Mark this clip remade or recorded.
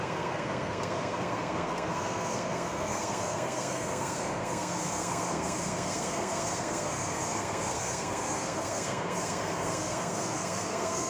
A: remade